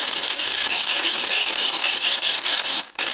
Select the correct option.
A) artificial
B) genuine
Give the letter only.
A